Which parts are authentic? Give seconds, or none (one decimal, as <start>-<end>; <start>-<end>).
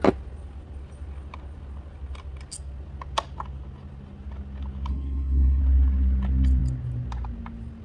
0.0-4.9; 5.6-7.8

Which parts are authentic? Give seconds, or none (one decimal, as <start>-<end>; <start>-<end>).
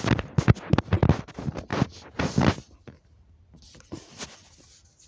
0.0-1.7; 4.6-5.1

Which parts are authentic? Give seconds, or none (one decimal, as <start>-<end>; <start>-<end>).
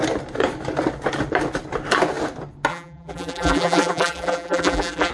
0.0-2.7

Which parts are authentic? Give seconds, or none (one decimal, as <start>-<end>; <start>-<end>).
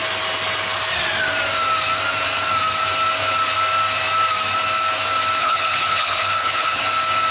0.0-5.4; 6.8-7.3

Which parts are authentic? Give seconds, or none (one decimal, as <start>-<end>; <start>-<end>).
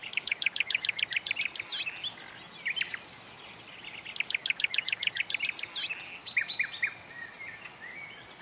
1.0-4.4; 5.2-8.4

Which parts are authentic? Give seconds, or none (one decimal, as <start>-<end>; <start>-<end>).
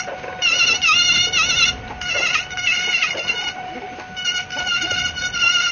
0.0-5.7